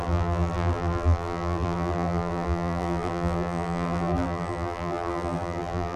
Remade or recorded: remade